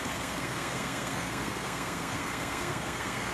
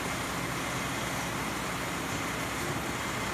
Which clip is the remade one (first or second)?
first